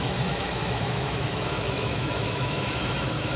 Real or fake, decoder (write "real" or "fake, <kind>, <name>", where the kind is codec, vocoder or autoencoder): fake, autoencoder, DAC-VAE